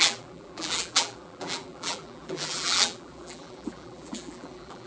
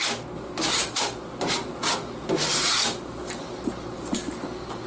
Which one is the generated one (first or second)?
first